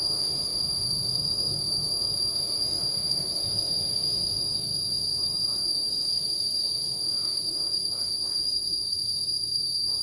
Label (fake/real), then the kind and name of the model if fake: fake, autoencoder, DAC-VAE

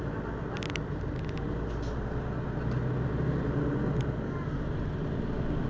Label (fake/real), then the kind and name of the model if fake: real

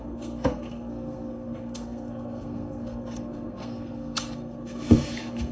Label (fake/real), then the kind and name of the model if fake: fake, codec, SNAC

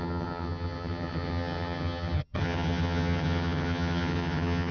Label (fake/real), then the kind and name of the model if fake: fake, vocoder, HiFi-GAN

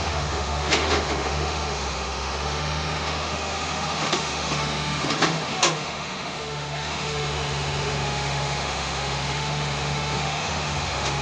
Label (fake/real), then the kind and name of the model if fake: fake, autoencoder, DAC-VAE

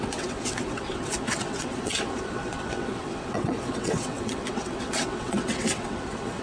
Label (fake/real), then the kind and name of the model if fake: fake, vocoder, WaveNeXt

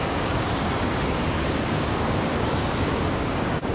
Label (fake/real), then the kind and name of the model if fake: fake, codec, DAC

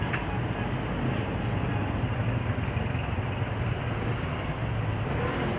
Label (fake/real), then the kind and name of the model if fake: real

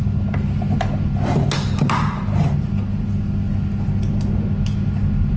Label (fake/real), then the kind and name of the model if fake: real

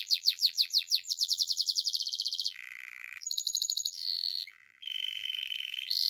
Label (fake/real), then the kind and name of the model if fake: fake, vocoder, BigVGAN v2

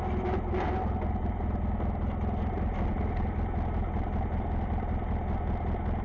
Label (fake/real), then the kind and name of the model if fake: real